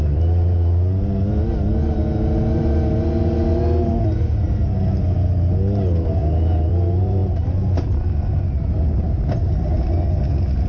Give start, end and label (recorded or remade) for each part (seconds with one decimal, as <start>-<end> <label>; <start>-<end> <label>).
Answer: 0.0-10.7 recorded